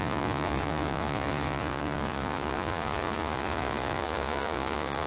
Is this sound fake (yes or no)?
yes